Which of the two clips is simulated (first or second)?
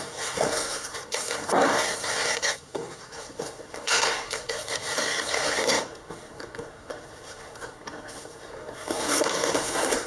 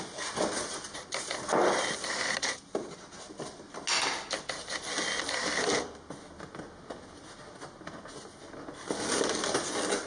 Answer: first